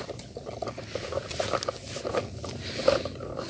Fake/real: real